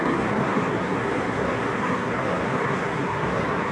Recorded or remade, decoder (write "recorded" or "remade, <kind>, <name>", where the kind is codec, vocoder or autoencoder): remade, codec, SNAC